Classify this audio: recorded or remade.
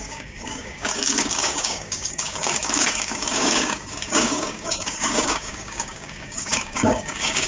remade